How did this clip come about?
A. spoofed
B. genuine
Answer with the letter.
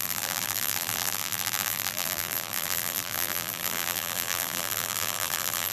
A